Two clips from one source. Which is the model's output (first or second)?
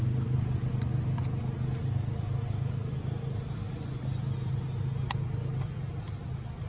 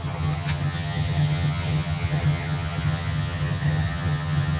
second